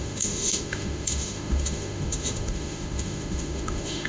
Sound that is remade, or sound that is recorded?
remade